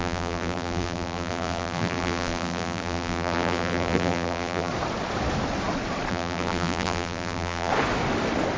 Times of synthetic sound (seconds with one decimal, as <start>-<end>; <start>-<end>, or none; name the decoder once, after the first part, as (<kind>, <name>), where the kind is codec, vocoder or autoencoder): 0.0-4.7 (vocoder, BigVGAN v2); 6.1-7.7